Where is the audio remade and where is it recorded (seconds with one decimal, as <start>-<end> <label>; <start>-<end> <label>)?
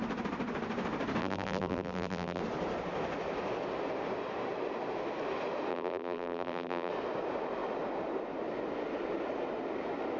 0.0-1.2 recorded; 1.2-2.4 remade; 2.4-5.7 recorded; 5.7-6.9 remade; 6.9-10.2 recorded